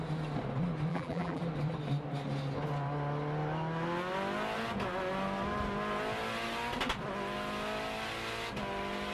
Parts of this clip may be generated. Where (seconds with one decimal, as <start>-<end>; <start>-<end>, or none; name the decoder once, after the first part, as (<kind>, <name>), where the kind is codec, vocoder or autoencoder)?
0.9-1.4 (vocoder, BigVGAN v2)